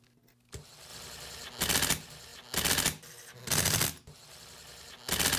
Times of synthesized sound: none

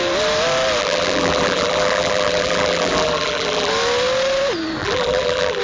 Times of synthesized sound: 0.8-3.7 (vocoder, BigVGAN v2); 4.8-5.6

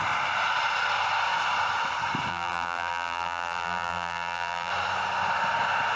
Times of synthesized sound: 2.3-4.7 (vocoder, BigVGAN v2)

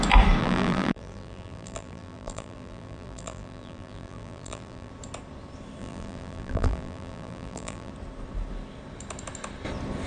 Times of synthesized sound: 0.4-4.9 (vocoder, BigVGAN v2); 5.8-7.9

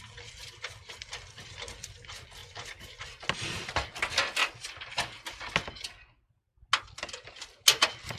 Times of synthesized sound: 2.4-3.0 (vocoder, BigVGAN v2)

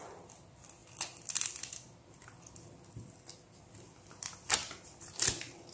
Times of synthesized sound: 4.6-5.3 (vocoder, BigVGAN v2)

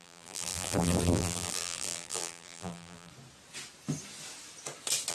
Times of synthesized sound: 0.0-3.1 (vocoder, BigVGAN v2)